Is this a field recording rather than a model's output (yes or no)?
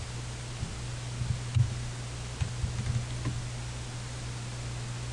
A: yes